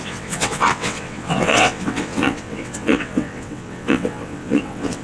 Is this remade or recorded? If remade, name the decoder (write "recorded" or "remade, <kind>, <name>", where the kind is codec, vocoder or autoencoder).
remade, vocoder, WaveNeXt